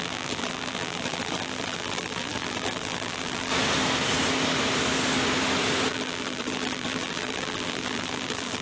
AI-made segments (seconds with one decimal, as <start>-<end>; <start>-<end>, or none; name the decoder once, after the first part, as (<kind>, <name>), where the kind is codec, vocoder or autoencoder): 0.0-3.5 (vocoder, BigVGAN v2); 5.9-8.6